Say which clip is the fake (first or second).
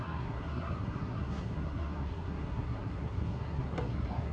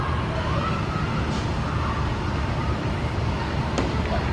first